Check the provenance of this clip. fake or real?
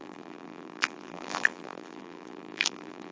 fake